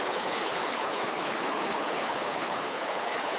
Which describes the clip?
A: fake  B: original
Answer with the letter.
A